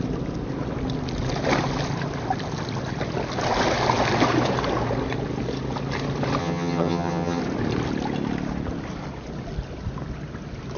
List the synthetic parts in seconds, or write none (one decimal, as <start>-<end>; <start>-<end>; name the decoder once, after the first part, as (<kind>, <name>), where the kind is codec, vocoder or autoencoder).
6.4-7.4 (vocoder, HiFi-GAN)